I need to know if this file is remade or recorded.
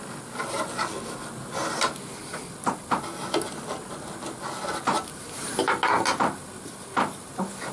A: recorded